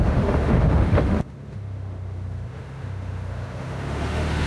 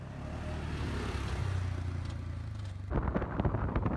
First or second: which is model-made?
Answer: first